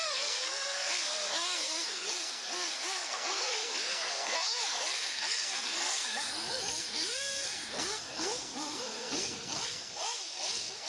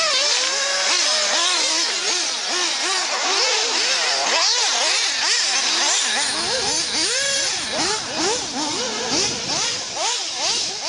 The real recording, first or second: second